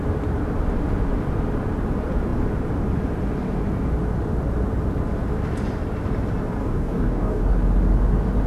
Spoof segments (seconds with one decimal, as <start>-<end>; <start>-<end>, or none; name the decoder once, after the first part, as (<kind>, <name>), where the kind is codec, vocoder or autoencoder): 6.6-7.4 (codec, DAC)